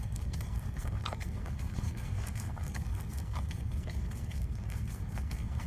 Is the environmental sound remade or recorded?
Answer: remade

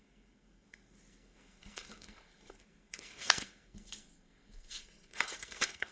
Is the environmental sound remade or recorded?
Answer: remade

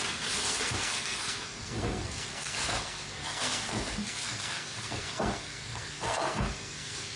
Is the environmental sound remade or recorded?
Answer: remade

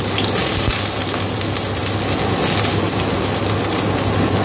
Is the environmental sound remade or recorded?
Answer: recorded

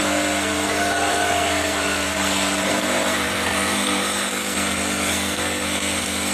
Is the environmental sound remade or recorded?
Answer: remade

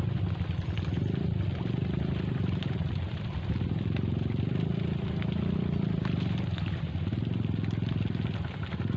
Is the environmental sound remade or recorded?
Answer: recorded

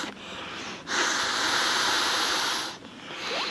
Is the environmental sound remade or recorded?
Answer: recorded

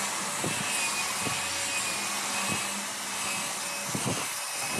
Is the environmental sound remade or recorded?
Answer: recorded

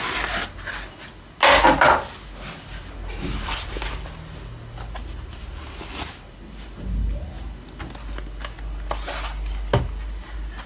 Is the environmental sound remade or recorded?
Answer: recorded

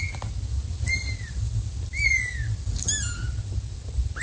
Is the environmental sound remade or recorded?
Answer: recorded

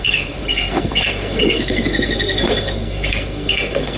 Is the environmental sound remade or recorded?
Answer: remade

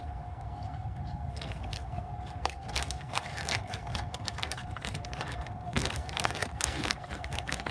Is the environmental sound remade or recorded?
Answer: remade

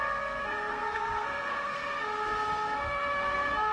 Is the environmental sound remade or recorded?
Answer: remade